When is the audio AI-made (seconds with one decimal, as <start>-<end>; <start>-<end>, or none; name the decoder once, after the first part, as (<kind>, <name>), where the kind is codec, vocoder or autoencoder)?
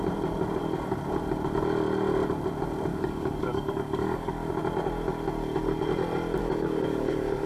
2.9-4.5 (codec, DAC); 6.4-7.5